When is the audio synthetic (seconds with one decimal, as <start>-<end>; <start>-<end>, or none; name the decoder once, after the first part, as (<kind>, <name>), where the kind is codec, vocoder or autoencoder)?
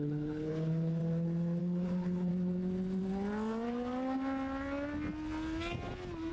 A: 0.0-1.0 (codec, HILCodec); 1.6-2.3